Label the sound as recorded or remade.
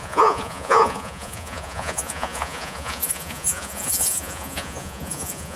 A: remade